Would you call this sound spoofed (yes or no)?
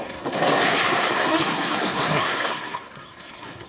yes